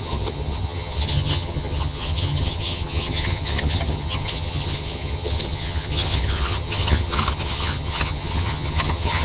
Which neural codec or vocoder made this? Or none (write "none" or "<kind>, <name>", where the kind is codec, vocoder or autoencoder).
vocoder, HiFi-GAN